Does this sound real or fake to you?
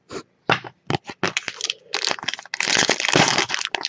real